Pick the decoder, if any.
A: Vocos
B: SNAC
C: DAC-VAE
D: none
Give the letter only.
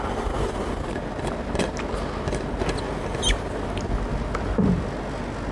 D